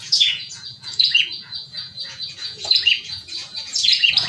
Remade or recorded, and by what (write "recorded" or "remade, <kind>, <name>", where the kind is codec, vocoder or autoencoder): remade, vocoder, Vocos